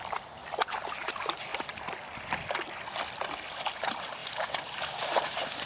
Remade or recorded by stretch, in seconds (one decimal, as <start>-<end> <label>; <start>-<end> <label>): 0.0-1.5 remade; 1.5-3.7 recorded; 3.7-5.7 remade